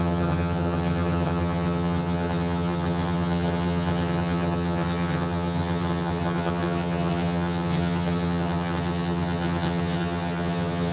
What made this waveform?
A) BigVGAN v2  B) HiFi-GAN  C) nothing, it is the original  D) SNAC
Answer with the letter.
B